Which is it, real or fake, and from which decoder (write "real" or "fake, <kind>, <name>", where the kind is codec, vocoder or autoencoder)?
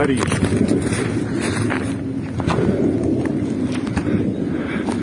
real